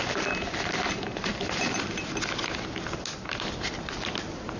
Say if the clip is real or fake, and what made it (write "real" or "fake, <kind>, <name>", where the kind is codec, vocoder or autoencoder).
real